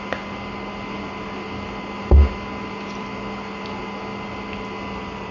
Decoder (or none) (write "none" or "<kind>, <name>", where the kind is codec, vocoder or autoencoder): none